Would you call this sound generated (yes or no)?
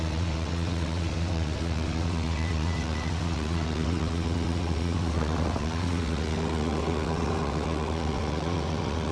yes